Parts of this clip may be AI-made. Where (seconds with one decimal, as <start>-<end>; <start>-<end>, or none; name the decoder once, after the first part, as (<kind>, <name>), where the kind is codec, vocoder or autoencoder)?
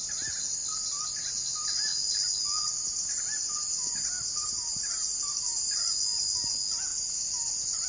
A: none